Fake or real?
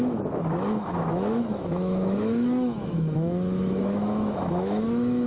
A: fake